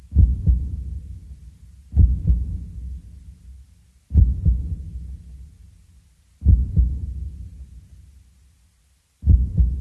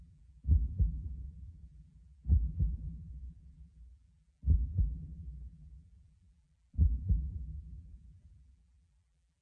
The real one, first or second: first